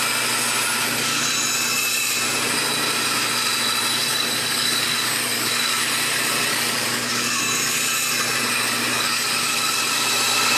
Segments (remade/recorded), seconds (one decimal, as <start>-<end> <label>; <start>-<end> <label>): 0.0-4.1 recorded; 4.1-5.8 remade; 5.8-6.5 recorded; 6.5-7.4 remade; 7.4-8.9 recorded; 8.9-9.8 remade; 9.8-10.6 recorded

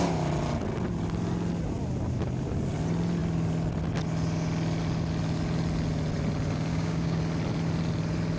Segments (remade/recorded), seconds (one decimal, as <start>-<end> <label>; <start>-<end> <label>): 0.0-6.7 recorded; 6.7-7.2 remade; 7.2-8.4 recorded

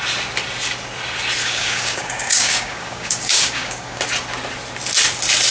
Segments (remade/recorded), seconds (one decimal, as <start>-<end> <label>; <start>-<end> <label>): 0.0-1.4 recorded; 1.4-4.0 remade; 4.0-5.5 recorded

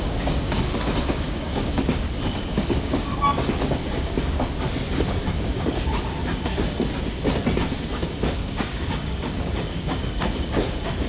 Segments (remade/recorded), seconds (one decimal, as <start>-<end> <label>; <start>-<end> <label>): 0.0-6.2 remade; 6.2-8.2 recorded; 8.2-11.1 remade

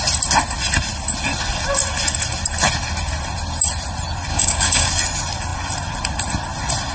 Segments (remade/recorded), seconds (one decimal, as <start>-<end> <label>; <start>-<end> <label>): 0.0-4.3 recorded; 4.3-4.9 remade; 4.9-6.9 recorded